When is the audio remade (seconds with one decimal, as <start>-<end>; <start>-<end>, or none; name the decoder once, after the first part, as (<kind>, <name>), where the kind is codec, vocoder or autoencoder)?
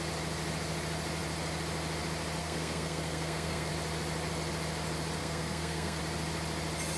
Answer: 2.4-3.7 (codec, SNAC); 5.2-6.0